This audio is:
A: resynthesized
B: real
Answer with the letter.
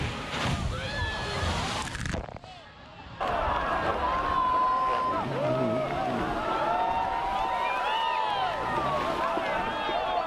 B